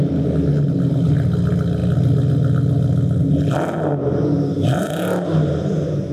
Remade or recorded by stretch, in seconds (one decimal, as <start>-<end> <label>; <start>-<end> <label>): 0.0-6.1 recorded